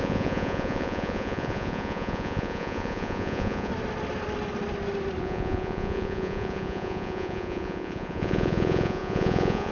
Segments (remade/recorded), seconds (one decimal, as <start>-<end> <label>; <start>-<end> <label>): 0.0-3.7 remade; 3.7-5.2 recorded; 5.2-9.7 remade